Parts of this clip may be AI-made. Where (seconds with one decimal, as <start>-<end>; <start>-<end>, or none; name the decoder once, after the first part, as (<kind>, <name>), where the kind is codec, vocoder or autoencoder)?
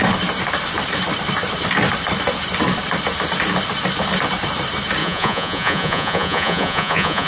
5.0-7.3 (vocoder, Vocos)